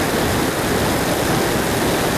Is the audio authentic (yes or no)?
yes